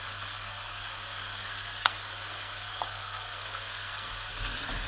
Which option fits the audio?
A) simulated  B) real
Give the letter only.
A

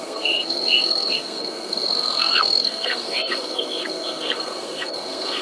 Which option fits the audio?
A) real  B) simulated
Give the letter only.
B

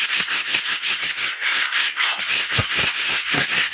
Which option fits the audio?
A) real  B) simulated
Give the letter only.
B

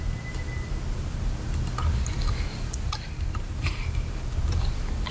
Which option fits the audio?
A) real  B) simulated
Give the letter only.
A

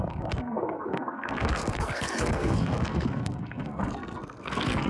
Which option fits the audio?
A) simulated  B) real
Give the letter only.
A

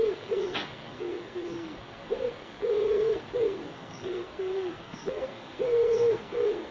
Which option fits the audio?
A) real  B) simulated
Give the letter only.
B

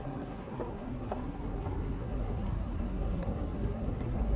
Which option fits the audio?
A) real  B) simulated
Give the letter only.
B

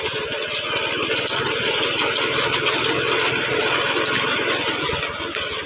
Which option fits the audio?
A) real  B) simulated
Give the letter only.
A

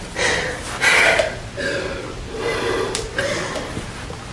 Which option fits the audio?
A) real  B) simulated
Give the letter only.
A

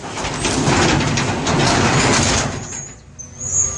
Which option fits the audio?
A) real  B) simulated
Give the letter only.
A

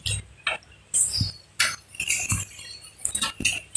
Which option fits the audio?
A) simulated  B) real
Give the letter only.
B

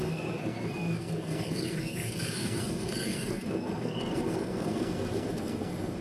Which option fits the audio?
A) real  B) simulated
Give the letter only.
B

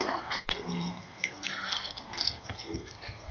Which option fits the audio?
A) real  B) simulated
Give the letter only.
B